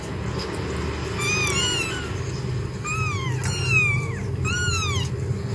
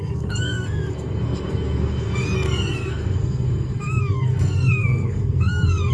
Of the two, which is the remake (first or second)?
second